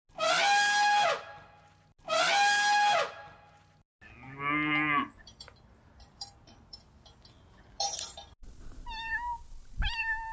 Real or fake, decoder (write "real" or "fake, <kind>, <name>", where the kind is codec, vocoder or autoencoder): real